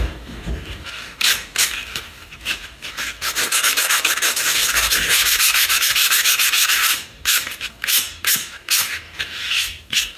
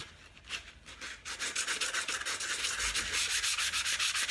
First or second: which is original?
second